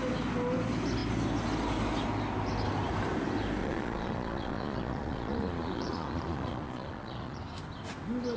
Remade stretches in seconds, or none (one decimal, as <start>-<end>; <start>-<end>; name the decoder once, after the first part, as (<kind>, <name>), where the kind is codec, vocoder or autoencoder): 3.6-7.4 (vocoder, Vocos)